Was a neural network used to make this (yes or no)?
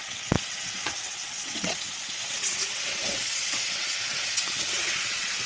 yes